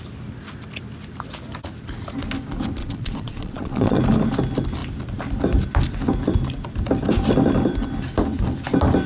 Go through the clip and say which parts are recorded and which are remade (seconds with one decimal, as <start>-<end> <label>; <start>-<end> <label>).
0.0-2.8 recorded; 2.8-4.0 remade; 4.0-9.1 recorded